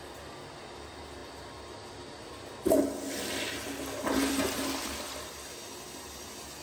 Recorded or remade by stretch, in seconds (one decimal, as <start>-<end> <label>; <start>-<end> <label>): 0.0-6.6 recorded